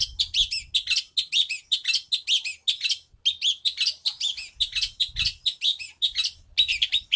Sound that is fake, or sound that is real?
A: real